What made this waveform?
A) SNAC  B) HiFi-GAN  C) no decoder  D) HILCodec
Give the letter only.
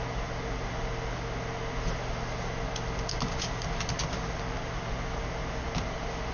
C